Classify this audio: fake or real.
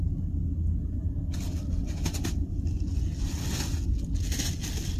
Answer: real